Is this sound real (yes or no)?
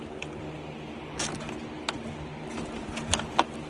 yes